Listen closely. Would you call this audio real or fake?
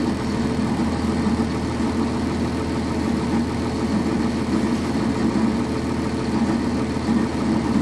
real